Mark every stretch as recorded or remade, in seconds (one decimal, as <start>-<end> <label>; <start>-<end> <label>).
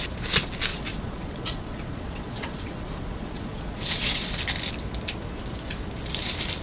0.0-0.7 recorded; 0.7-4.4 remade; 4.4-6.6 recorded